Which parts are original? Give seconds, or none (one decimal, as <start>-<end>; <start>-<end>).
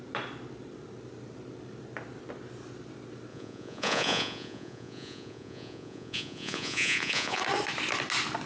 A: 0.0-3.3; 7.4-8.5